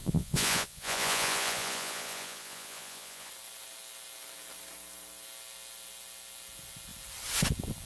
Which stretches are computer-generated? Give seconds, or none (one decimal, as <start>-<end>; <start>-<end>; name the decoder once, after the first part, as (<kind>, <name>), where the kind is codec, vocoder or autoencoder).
0.0-3.3 (vocoder, Vocos)